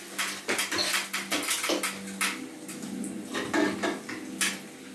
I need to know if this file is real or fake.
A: real